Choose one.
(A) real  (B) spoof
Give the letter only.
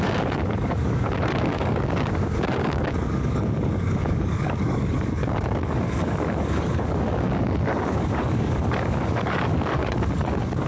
B